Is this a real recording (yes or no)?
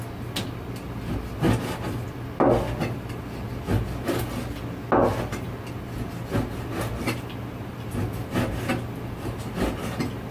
yes